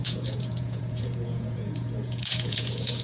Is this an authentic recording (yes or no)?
no